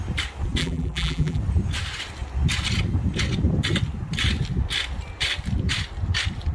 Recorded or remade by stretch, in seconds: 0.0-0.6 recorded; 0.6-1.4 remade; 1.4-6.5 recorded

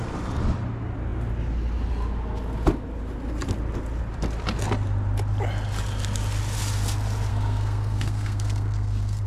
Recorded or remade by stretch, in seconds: 0.0-7.3 recorded; 7.3-9.3 remade

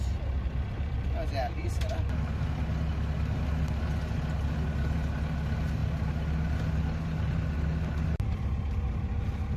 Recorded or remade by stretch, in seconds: 0.0-9.6 recorded

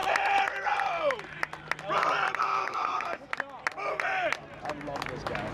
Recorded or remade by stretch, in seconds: 0.0-2.4 recorded; 2.4-3.3 remade; 3.3-5.5 recorded

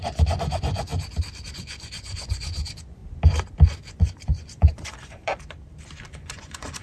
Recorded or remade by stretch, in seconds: 0.0-0.9 remade; 0.9-1.5 recorded; 1.5-3.0 remade; 3.0-3.9 recorded; 3.9-5.3 remade; 5.3-6.1 recorded; 6.1-6.8 remade

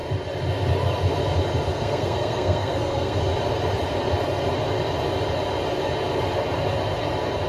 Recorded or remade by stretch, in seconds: 0.0-1.7 recorded; 1.7-3.2 remade; 3.2-7.5 recorded

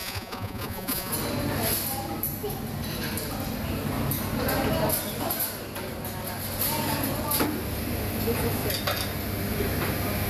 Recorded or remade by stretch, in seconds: 0.0-1.1 remade; 1.1-10.3 recorded

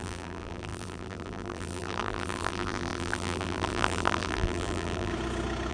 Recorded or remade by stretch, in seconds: 0.0-5.1 remade; 5.1-5.7 recorded